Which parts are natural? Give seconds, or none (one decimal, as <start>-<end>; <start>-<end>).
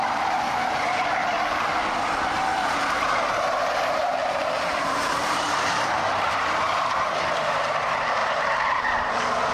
0.0-2.5; 7.6-8.2; 9.1-9.5